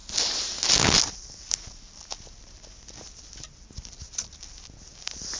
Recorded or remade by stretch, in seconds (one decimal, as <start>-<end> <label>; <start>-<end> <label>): 0.0-5.4 recorded